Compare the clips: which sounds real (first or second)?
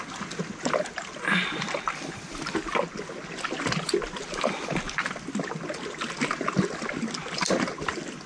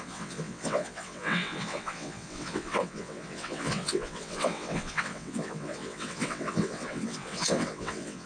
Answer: first